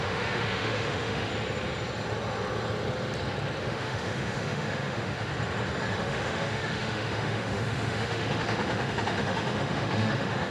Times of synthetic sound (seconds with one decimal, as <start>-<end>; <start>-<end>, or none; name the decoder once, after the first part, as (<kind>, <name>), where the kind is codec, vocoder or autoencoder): 0.0-1.3 (autoencoder, DAC-VAE); 3.6-5.3; 5.9-10.5